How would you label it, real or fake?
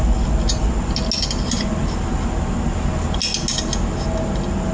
real